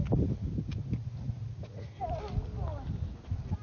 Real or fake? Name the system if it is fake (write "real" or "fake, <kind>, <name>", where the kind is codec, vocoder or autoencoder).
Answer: real